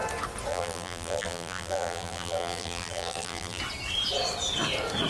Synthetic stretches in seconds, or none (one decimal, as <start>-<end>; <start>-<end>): 0.5-3.6